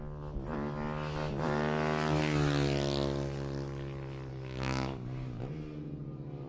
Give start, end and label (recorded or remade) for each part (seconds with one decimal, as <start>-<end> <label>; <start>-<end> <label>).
0.0-4.3 recorded; 4.3-5.4 remade; 5.4-6.5 recorded

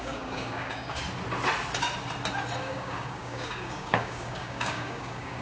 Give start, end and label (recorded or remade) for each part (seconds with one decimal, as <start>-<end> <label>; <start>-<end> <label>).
0.0-1.0 remade; 1.0-2.6 recorded; 2.6-5.4 remade

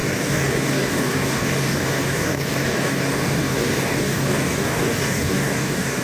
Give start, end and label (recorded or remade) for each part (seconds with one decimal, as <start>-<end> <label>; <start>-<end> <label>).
0.0-6.0 remade

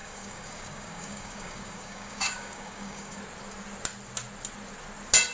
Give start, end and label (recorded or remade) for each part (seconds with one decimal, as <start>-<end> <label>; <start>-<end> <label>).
0.0-3.2 remade; 3.2-5.3 recorded

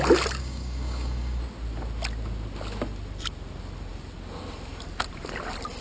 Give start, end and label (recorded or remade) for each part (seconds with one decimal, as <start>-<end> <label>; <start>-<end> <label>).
0.0-0.4 recorded; 0.4-1.4 remade; 1.4-5.8 recorded